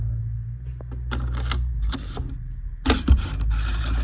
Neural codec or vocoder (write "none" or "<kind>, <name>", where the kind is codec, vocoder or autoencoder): none